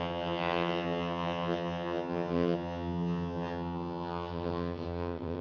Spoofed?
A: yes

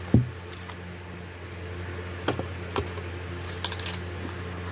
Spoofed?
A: no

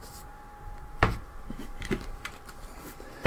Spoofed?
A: yes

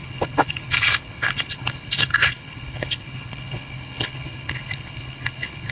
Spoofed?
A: yes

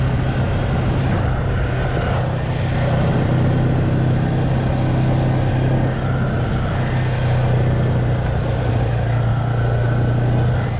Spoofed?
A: no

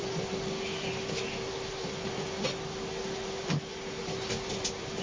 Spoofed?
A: no